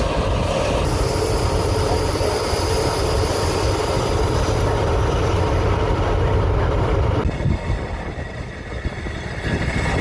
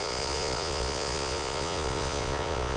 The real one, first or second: first